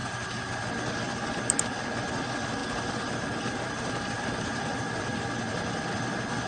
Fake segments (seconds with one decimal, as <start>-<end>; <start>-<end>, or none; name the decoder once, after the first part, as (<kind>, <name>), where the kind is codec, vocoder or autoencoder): 0.0-0.6 (vocoder, BigVGAN v2); 2.6-4.9